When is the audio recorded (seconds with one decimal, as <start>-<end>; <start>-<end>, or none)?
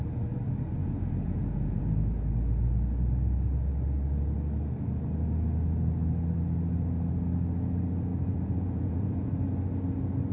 0.0-0.8; 1.8-8.1; 9.3-10.3